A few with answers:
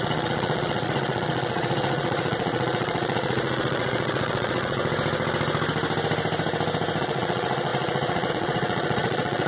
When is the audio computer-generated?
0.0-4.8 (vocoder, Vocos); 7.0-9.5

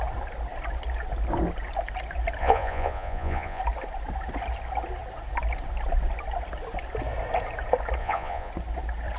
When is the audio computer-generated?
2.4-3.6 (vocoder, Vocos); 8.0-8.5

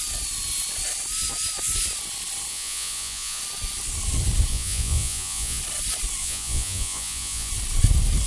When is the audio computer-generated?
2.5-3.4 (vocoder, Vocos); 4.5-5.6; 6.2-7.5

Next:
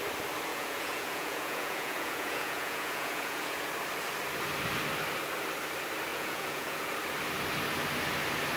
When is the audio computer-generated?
0.5-3.7 (vocoder, Vocos); 6.1-6.9

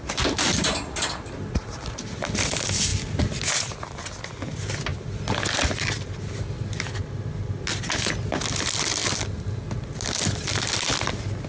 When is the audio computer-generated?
none

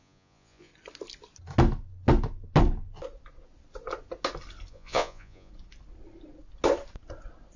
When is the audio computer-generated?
0.0-0.7 (vocoder, Vocos); 4.7-5.5